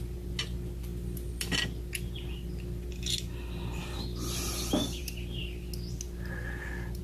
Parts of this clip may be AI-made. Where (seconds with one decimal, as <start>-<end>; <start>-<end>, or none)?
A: none